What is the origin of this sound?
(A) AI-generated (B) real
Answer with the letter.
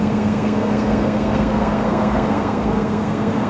A